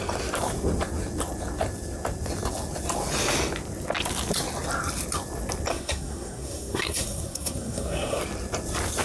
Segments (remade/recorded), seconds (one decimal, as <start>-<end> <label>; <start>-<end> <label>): 0.0-5.7 recorded; 5.7-8.2 remade; 8.2-9.0 recorded